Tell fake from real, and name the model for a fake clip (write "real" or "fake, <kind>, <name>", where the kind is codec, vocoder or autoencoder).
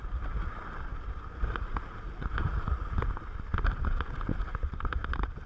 real